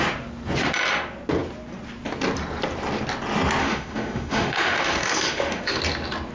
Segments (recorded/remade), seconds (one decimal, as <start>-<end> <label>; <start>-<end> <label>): 0.0-3.6 recorded; 3.6-5.8 remade; 5.8-6.3 recorded